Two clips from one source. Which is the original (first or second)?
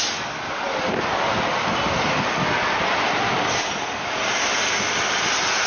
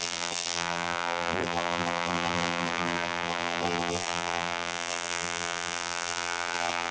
first